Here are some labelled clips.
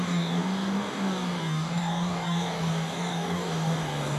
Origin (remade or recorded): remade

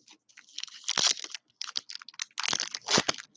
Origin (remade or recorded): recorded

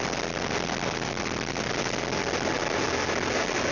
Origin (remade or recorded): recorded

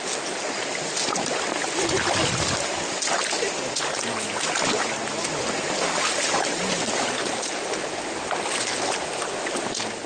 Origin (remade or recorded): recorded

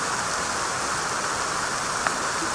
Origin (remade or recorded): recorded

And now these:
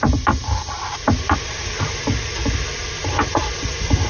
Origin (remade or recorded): recorded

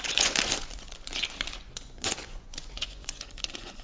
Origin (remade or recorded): remade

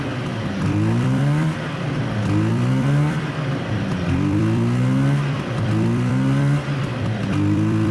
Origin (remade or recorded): remade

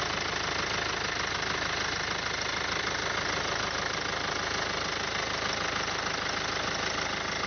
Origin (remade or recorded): recorded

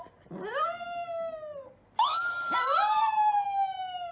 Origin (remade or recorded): recorded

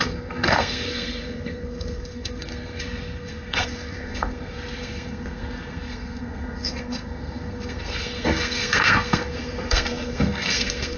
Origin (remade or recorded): remade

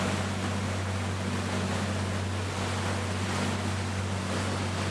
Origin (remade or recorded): recorded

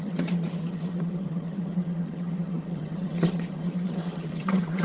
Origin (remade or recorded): remade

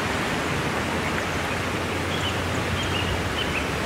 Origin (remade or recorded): recorded